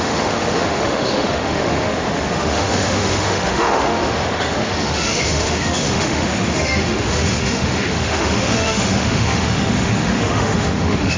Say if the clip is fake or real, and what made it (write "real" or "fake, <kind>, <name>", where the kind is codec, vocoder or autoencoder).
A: fake, autoencoder, DAC-VAE